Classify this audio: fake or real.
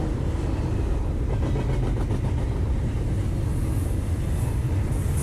real